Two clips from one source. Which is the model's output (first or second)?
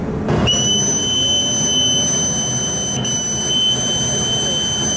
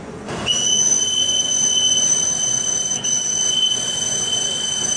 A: second